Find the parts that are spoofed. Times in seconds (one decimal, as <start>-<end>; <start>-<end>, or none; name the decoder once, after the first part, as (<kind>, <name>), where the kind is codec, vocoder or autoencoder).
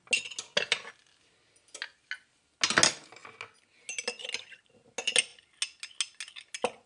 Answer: none